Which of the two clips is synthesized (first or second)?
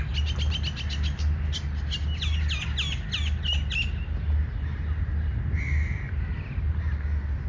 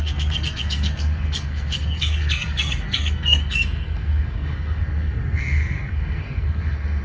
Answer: second